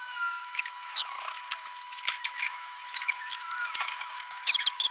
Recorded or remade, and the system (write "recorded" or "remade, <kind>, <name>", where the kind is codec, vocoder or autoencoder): remade, autoencoder, DAC-VAE